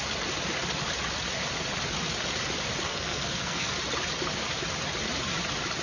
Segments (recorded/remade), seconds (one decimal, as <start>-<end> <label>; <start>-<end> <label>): 0.0-2.9 recorded; 2.9-3.7 remade; 3.7-5.8 recorded